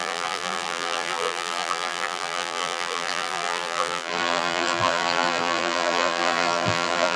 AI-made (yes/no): yes